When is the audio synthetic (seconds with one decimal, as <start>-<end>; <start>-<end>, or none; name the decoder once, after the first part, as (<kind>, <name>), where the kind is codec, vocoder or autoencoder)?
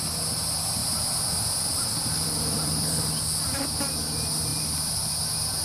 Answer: 0.8-3.2 (vocoder, BigVGAN v2); 4.5-5.1